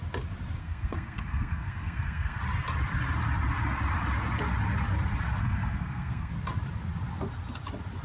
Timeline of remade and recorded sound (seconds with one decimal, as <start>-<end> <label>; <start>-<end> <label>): 0.0-0.6 recorded; 0.6-2.4 remade; 2.4-5.4 recorded; 5.4-6.3 remade; 6.3-8.0 recorded